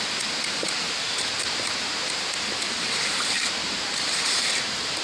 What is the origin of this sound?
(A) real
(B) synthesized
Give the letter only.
B